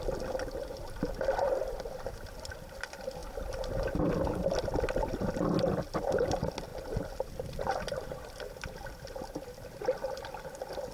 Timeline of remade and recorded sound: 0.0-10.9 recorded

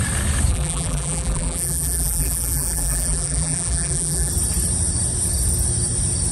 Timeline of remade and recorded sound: 0.0-0.5 recorded; 0.5-4.3 remade; 4.3-6.3 recorded

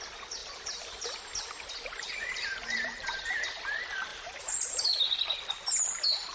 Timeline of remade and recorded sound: 0.0-0.4 recorded; 0.4-1.2 remade; 1.2-2.4 recorded; 2.4-3.3 remade; 3.3-4.1 recorded; 4.1-4.8 remade; 4.8-6.3 recorded

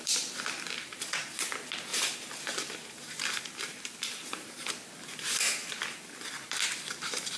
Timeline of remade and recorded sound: 0.0-7.4 remade

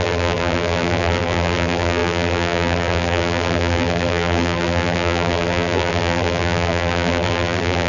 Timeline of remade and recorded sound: 0.0-7.9 remade

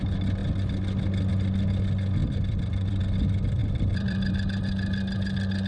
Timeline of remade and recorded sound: 0.0-2.2 recorded; 2.2-3.0 remade; 3.0-3.6 recorded; 3.6-4.3 remade; 4.3-5.7 recorded

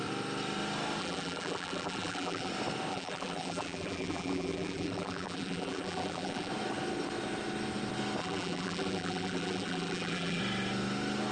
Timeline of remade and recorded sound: 0.0-1.0 recorded; 1.0-2.5 remade; 2.5-2.9 recorded; 2.9-6.5 remade; 6.5-8.2 recorded; 8.2-10.4 remade; 10.4-11.3 recorded

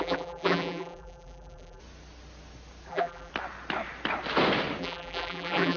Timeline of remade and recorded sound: 0.0-1.8 remade; 1.8-2.9 recorded; 2.9-3.3 remade; 3.3-4.8 recorded; 4.8-5.8 remade